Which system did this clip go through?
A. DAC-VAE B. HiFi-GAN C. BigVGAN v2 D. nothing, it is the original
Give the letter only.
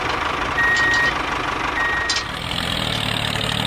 D